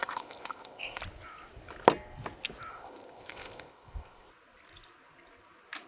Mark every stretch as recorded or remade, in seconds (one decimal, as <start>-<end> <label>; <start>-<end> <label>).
0.0-1.0 remade; 1.0-2.7 recorded; 2.7-4.3 remade; 4.3-5.9 recorded